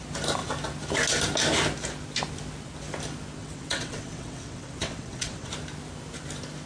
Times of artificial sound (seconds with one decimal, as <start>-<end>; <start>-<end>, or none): 3.4-5.5